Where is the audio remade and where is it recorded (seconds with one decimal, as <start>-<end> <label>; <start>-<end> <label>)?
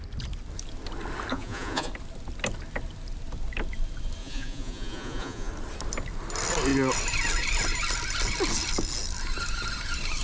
0.0-1.3 recorded; 1.3-1.9 remade; 1.9-4.2 recorded; 4.2-5.5 remade; 5.5-10.2 recorded